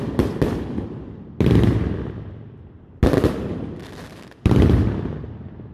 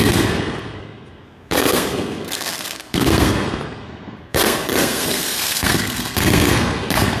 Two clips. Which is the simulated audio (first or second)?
second